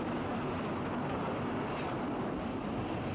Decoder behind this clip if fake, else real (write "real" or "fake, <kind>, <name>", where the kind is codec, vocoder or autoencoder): real